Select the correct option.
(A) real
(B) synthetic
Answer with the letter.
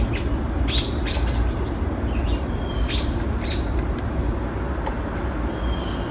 A